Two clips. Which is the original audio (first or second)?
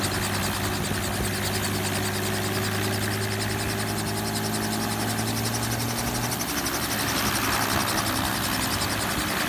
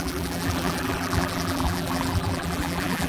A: first